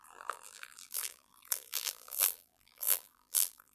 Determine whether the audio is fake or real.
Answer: fake